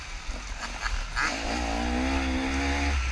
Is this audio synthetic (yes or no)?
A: no